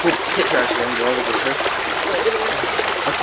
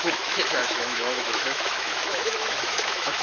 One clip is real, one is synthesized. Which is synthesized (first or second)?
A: second